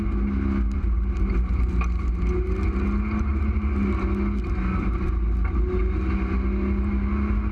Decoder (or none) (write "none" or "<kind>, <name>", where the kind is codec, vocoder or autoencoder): none